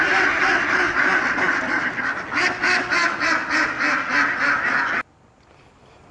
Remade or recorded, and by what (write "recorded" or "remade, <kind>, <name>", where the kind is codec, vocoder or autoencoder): recorded